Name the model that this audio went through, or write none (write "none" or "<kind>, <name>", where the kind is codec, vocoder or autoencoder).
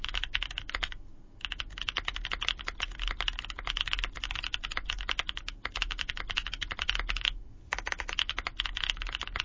none